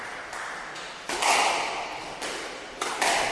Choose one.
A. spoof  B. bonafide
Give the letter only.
B